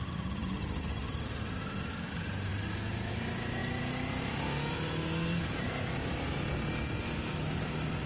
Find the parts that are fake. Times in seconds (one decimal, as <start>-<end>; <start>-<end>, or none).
none